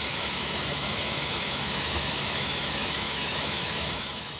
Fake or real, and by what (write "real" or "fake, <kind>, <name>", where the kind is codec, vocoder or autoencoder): fake, autoencoder, DAC-VAE